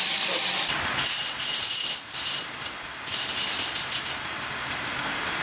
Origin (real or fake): real